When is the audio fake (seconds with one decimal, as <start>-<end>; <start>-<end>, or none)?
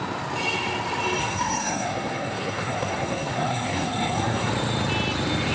1.2-4.5